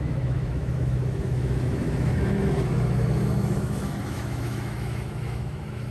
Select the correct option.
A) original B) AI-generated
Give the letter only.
B